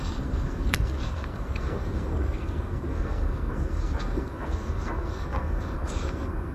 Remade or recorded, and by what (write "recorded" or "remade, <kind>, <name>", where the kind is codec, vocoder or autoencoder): remade, codec, SNAC